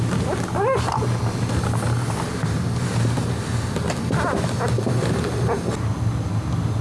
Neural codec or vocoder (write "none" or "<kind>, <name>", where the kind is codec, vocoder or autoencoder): none